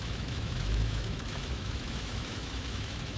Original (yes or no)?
no